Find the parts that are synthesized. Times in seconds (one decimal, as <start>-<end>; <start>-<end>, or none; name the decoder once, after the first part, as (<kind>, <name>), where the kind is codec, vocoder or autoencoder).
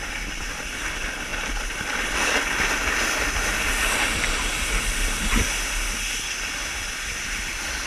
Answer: none